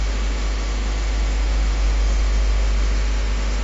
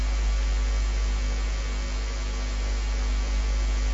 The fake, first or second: first